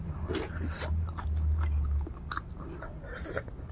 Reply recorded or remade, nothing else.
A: recorded